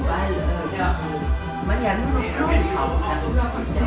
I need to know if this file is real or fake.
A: real